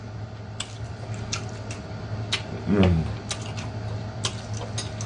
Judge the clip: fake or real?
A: real